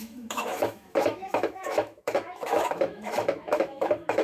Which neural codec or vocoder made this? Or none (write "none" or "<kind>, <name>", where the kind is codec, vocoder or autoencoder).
autoencoder, DAC-VAE